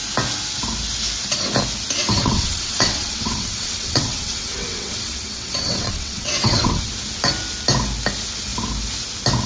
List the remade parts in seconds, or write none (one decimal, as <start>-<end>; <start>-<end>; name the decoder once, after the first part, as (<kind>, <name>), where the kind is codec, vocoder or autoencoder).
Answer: 2.2-6.9 (vocoder, WaveNeXt)